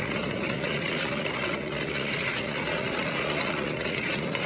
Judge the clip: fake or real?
fake